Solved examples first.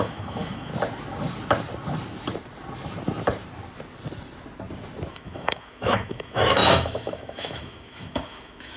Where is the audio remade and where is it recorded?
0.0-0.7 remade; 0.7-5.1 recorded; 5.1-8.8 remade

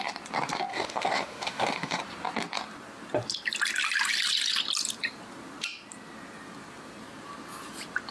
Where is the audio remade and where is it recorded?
0.0-0.7 recorded; 0.7-2.0 remade; 2.0-8.1 recorded

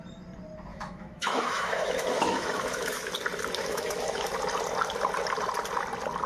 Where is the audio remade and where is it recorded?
0.0-0.7 recorded; 0.7-3.1 remade; 3.1-3.6 recorded; 3.6-4.3 remade; 4.3-6.3 recorded